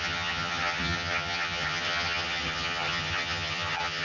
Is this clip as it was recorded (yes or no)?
no